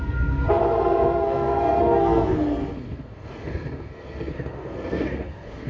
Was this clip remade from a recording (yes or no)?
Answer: yes